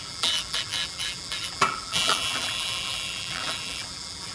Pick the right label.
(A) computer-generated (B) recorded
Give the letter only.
A